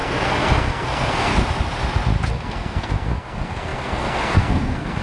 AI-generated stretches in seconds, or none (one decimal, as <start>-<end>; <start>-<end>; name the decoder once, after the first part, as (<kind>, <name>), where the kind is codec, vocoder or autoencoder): 0.0-1.3 (codec, SNAC); 2.3-5.0